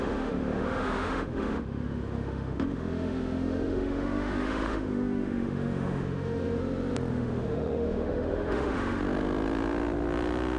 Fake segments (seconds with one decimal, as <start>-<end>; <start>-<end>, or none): 0.0-6.6; 7.1-9.0